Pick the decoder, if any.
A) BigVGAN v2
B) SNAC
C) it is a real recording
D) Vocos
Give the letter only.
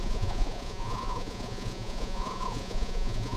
D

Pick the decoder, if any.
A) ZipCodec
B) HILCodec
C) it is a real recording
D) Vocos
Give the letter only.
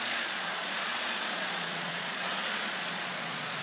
D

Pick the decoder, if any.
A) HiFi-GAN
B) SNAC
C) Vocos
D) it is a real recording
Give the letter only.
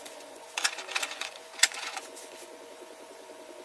C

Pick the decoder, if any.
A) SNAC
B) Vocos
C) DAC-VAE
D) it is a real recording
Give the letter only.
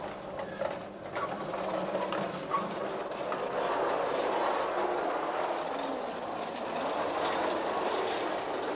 D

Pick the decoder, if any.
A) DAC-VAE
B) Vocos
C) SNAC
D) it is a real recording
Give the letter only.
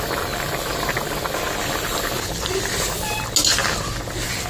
D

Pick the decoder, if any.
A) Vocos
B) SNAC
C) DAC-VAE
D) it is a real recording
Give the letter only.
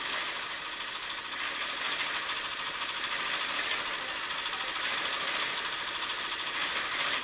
D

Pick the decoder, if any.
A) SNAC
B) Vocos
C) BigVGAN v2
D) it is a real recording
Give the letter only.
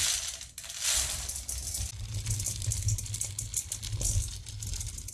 D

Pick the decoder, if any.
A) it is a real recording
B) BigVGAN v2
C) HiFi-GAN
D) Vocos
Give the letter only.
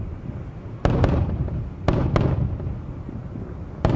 A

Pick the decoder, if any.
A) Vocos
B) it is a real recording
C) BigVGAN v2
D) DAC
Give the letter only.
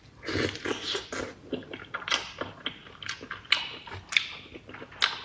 B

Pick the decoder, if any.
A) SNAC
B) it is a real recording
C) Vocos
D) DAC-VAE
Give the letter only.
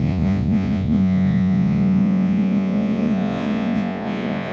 C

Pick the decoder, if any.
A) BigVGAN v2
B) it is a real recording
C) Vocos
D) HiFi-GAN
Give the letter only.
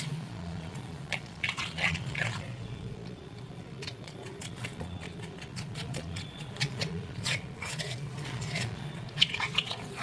C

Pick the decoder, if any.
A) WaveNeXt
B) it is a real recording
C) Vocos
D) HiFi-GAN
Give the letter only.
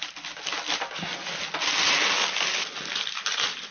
B